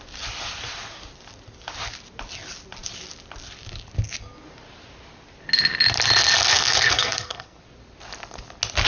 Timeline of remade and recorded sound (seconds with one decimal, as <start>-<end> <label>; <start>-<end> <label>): 0.0-6.5 recorded; 6.5-7.6 remade; 7.6-8.9 recorded